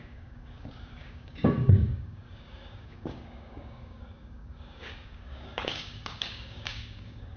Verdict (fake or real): fake